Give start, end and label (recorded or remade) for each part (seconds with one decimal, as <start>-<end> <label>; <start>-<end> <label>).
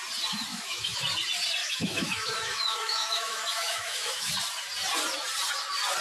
0.0-0.5 recorded; 0.5-1.0 remade; 1.0-1.6 recorded; 1.6-4.3 remade; 4.3-6.0 recorded